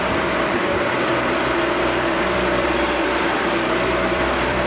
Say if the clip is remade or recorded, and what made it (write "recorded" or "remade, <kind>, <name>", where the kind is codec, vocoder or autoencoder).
remade, vocoder, BigVGAN v2